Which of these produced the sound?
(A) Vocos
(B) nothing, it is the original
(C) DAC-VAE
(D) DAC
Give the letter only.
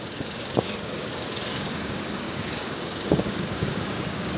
D